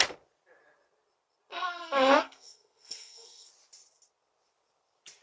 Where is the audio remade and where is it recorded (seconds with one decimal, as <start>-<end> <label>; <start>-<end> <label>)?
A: 0.0-1.5 recorded; 1.5-3.5 remade; 3.5-5.2 recorded